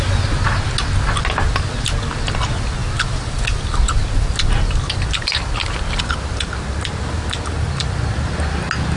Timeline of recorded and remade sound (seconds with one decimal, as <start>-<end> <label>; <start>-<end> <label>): 0.0-9.0 recorded